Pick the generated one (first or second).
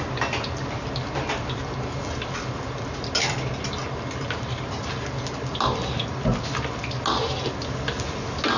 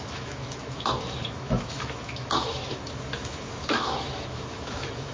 second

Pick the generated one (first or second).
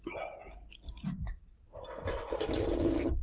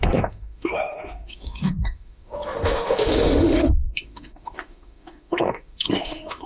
second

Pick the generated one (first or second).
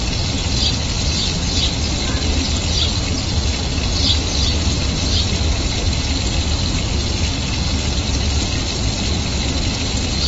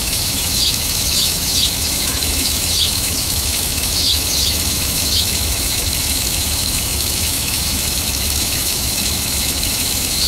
second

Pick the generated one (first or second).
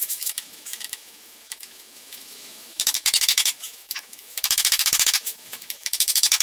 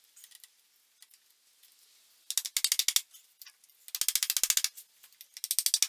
first